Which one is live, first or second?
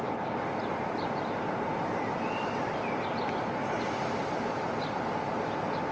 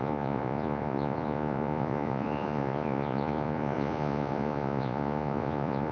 first